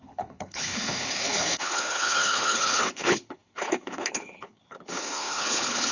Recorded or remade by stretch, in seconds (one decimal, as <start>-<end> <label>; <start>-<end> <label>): 0.0-5.9 remade